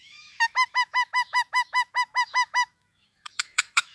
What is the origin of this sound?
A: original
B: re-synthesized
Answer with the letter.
B